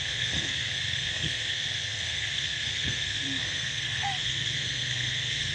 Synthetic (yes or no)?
yes